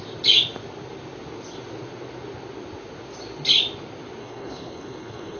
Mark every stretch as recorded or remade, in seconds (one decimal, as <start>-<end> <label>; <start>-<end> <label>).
0.0-4.2 recorded; 4.2-5.4 remade